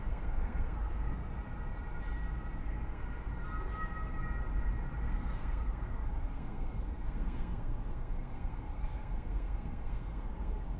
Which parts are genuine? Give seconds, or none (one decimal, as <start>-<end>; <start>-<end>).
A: 1.2-2.6; 3.3-5.0